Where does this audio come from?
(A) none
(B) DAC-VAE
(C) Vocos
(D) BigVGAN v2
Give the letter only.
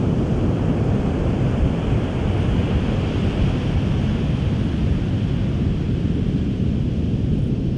A